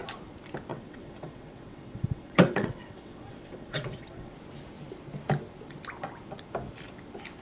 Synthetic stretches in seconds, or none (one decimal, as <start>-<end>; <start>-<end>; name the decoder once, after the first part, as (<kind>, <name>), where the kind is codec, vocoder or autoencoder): 0.7-4.3 (vocoder, WaveNeXt)